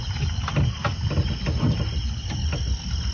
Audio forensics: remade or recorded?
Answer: recorded